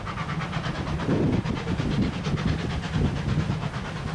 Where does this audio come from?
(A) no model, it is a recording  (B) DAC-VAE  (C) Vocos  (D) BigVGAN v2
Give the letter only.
A